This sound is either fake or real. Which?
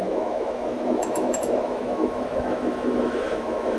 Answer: fake